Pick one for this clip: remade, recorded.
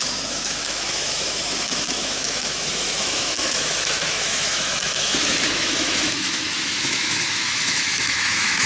remade